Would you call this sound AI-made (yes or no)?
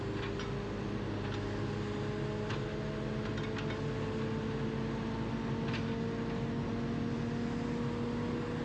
no